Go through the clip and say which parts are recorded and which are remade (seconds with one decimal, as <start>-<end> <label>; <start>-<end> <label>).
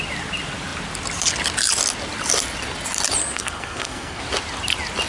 0.0-3.2 recorded; 3.2-4.2 remade; 4.2-5.1 recorded